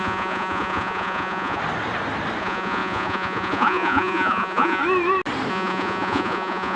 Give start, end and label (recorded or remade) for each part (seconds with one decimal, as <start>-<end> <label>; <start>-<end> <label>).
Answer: 0.0-1.6 remade; 1.6-2.4 recorded; 2.4-4.8 remade; 4.8-5.5 recorded; 5.5-6.8 remade

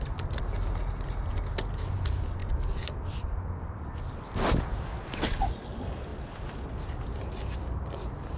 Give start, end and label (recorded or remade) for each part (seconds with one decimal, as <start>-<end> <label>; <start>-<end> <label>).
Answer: 0.0-8.4 recorded

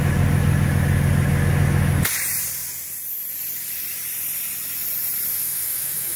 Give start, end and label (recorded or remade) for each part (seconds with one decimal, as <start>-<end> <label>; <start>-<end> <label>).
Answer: 0.0-5.3 recorded; 5.3-6.2 remade

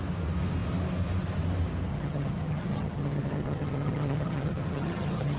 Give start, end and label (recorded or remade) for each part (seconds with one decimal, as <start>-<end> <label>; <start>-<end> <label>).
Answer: 0.0-1.9 recorded; 1.9-5.4 remade

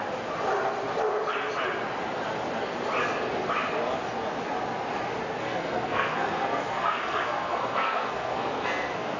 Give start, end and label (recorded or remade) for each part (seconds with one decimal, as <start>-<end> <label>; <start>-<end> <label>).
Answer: 0.0-5.4 recorded; 5.4-9.2 remade